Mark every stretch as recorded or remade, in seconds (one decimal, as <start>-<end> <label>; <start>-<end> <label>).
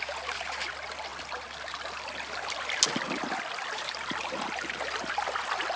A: 0.0-5.8 recorded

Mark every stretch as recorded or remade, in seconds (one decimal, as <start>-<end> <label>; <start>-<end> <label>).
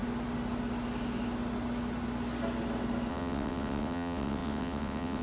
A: 0.0-3.1 recorded; 3.1-5.2 remade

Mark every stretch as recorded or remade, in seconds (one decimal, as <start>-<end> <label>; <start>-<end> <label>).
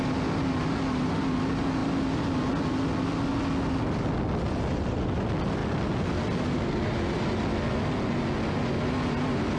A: 0.0-9.6 recorded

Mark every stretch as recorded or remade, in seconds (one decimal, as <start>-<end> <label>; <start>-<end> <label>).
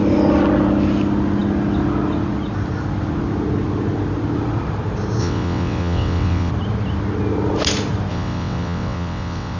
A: 0.0-5.2 recorded; 5.2-6.5 remade; 6.5-8.1 recorded; 8.1-9.6 remade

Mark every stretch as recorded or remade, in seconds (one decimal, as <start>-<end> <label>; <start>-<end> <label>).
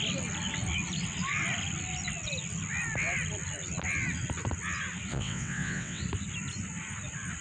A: 0.0-5.1 recorded; 5.1-6.0 remade; 6.0-7.4 recorded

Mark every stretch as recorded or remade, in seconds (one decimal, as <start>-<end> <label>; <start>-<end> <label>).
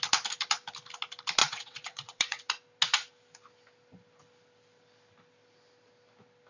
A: 0.0-1.4 recorded; 1.4-2.4 remade; 2.4-6.5 recorded